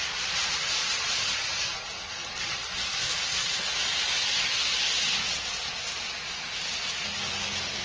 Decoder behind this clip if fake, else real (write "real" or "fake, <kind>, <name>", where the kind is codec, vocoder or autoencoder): real